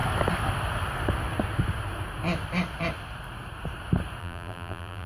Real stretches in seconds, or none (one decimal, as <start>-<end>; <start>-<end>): 0.0-4.2